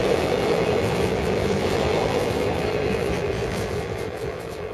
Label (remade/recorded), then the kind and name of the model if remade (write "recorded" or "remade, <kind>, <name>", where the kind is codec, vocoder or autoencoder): remade, vocoder, BigVGAN v2